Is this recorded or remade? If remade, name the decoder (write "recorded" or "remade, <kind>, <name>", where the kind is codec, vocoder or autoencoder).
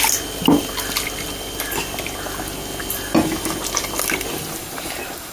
recorded